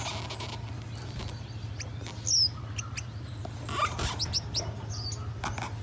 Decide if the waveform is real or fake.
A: real